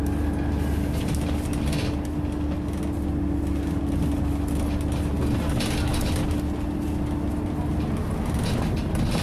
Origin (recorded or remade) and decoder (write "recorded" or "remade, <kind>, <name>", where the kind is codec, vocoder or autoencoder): recorded